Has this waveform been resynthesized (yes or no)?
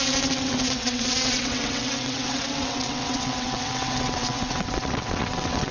yes